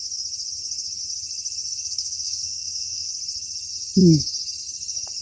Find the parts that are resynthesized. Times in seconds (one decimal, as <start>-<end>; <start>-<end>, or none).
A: 1.8-3.1

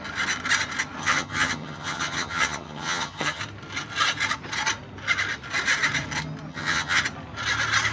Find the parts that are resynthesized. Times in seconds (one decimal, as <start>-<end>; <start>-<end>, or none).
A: 1.0-3.4; 6.5-7.0